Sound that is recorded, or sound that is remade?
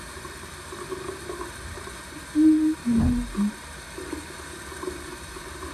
remade